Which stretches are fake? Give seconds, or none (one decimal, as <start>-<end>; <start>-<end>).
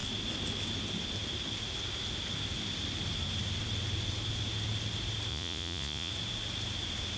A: 5.3-6.1